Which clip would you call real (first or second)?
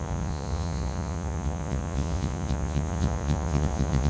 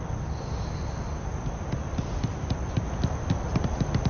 second